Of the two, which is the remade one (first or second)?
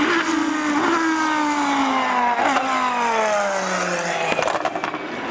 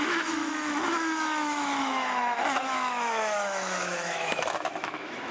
second